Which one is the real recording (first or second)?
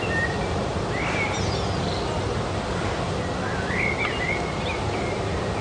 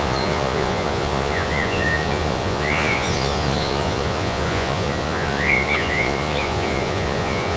first